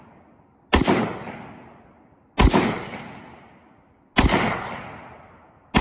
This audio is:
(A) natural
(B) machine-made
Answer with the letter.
A